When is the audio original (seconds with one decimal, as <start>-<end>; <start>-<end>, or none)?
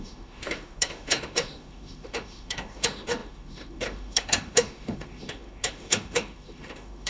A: none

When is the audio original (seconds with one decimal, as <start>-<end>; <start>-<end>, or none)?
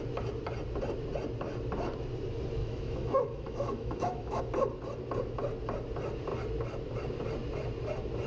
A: 0.0-2.6; 4.4-8.3